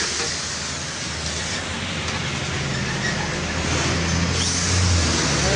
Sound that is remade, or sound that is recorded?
recorded